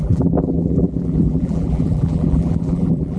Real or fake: fake